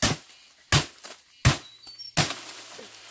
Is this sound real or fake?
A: real